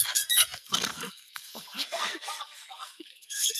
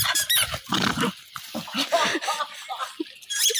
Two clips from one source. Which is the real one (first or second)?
second